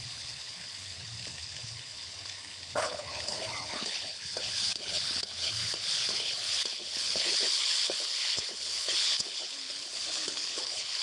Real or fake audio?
fake